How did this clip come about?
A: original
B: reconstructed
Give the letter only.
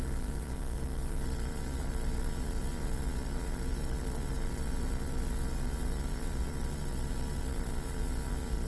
B